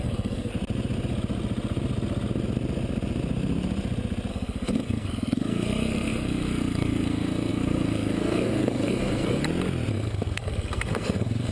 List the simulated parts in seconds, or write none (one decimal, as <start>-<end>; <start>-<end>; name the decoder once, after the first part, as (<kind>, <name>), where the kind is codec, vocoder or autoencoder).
0.0-0.5 (codec, SNAC); 4.3-9.4; 9.9-11.5